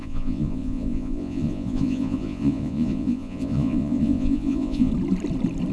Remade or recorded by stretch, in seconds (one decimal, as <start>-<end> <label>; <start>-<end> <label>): 0.0-4.9 remade; 4.9-5.7 recorded